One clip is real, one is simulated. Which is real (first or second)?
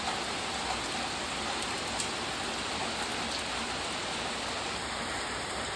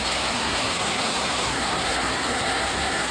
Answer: first